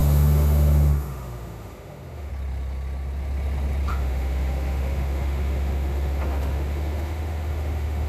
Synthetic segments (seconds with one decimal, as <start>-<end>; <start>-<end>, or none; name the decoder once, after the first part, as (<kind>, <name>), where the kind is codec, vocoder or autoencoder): 0.0-2.3 (autoencoder, DAC-VAE); 3.9-8.1